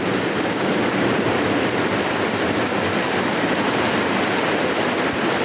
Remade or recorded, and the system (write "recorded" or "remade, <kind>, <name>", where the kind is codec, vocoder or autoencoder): recorded